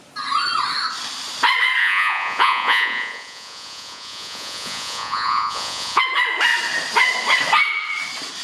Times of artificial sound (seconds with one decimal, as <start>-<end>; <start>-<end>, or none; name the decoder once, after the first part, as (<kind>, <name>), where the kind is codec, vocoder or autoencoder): 1.8-6.0 (vocoder, Vocos)